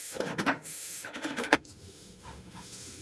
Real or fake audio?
fake